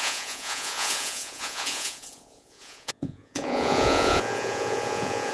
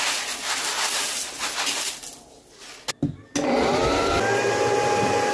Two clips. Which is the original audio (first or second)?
second